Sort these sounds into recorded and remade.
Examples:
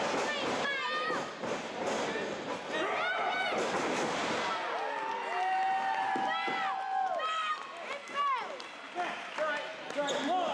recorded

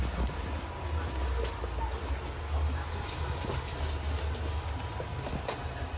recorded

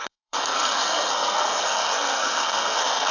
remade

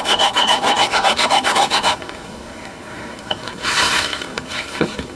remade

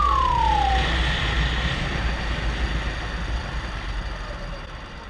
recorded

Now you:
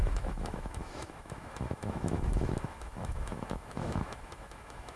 remade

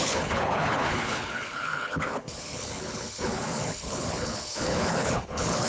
remade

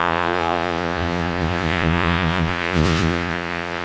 remade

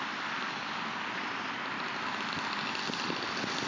recorded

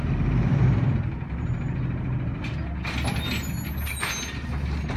recorded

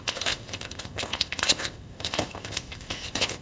remade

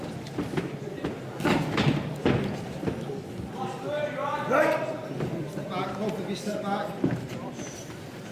recorded